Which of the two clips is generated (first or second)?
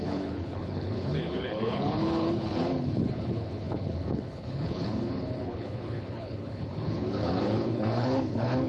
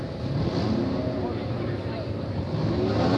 first